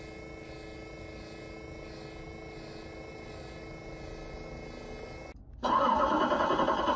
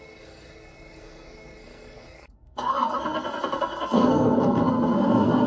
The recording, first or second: first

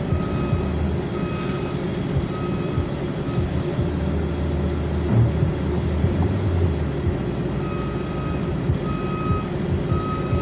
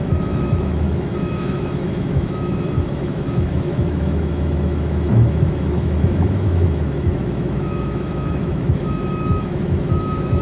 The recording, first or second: first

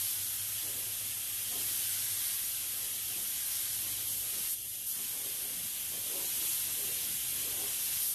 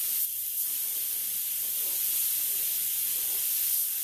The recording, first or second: first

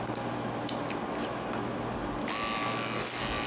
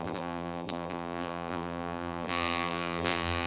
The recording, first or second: first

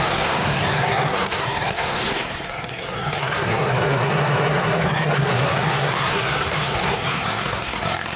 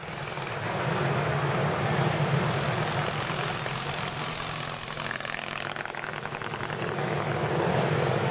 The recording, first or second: second